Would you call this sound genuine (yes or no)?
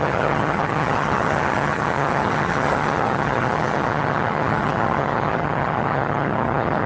no